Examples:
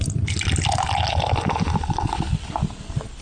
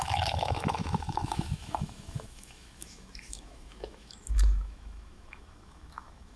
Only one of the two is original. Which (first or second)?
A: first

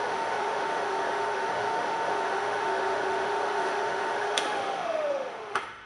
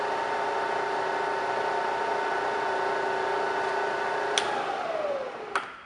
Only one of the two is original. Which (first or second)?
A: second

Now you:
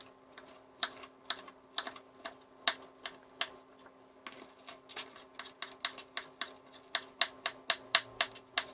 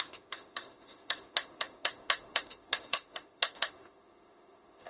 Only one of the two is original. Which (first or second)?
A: first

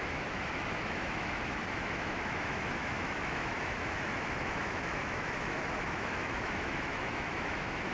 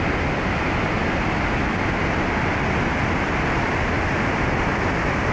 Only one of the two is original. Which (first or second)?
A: second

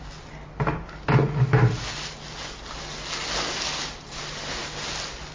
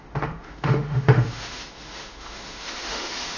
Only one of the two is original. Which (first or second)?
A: first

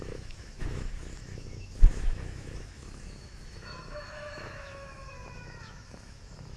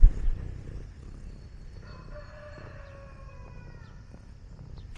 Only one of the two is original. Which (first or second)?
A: second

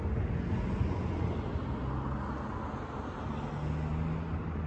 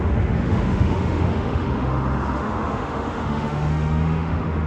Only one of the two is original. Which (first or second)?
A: first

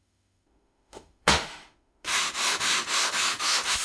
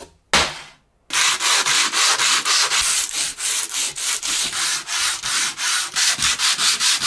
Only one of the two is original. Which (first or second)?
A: second